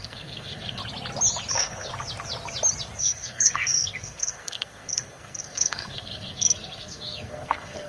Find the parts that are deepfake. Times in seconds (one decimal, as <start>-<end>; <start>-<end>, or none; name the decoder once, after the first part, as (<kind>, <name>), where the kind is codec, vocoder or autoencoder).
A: 0.0-0.8 (codec, SNAC); 1.5-1.9; 3.0-7.9